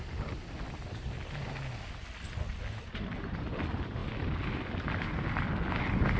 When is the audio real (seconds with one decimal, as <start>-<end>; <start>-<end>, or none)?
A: 0.0-6.2